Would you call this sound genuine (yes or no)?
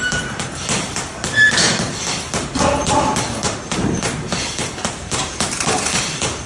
no